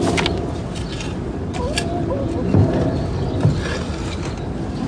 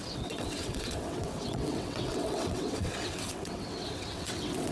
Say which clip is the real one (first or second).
first